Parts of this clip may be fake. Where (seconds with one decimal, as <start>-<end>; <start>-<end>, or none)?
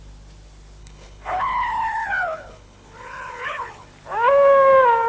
0.8-3.9